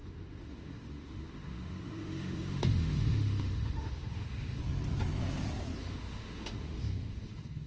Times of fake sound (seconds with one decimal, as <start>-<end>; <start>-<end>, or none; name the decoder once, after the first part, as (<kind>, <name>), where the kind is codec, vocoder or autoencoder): 0.0-4.6 (autoencoder, DAC-VAE); 5.8-7.7